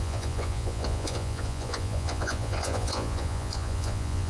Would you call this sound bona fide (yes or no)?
no